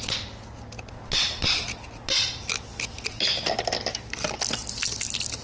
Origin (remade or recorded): recorded